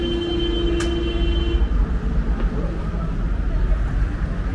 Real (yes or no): yes